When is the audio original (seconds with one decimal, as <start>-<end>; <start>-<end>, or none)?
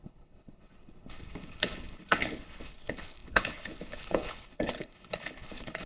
none